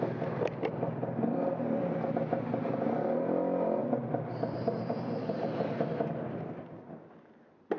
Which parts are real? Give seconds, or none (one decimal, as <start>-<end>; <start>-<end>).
0.0-3.8; 6.5-7.8